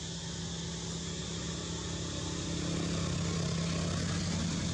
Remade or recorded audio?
recorded